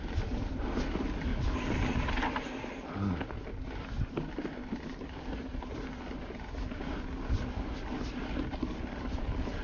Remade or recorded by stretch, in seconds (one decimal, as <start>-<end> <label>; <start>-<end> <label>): 0.0-9.6 recorded